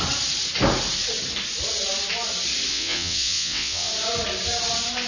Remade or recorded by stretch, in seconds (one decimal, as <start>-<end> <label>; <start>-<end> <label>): 0.0-2.7 recorded; 2.7-3.9 remade; 3.9-5.1 recorded